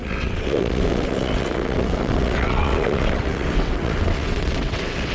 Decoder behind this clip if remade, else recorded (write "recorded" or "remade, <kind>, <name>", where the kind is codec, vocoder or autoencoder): remade, vocoder, WaveNeXt